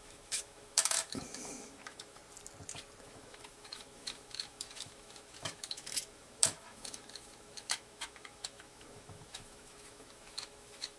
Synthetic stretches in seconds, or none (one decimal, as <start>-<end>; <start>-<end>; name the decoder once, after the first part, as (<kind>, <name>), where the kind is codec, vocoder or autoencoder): 0.0-2.2 (autoencoder, DAC-VAE); 3.0-11.0